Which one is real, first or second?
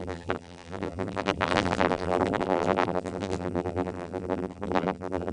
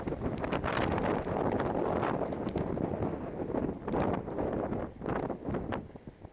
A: second